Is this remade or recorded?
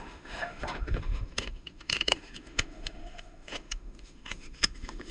remade